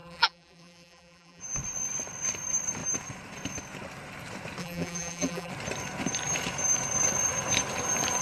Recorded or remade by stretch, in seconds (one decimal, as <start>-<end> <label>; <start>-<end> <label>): 0.0-1.4 remade; 1.4-4.6 recorded; 4.6-5.5 remade; 5.5-8.2 recorded